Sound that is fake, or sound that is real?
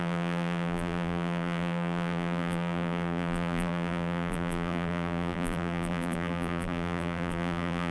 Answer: fake